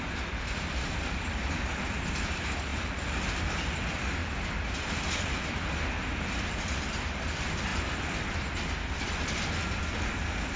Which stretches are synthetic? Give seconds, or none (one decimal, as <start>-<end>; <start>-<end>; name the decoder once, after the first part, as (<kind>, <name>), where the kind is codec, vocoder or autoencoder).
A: 2.7-3.6 (vocoder, BigVGAN v2); 4.2-5.5